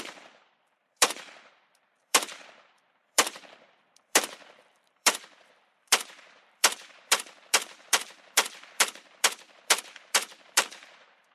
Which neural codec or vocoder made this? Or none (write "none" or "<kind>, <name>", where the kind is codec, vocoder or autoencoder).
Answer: vocoder, BigVGAN v2